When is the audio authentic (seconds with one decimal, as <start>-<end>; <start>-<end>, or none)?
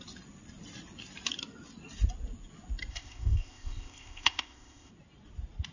0.0-2.9; 4.9-5.7